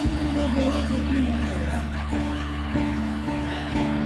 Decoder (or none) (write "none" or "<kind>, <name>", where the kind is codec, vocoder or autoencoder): codec, HILCodec